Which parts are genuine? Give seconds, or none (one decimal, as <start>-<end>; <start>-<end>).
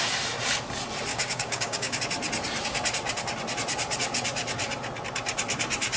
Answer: 0.0-1.1; 2.0-6.0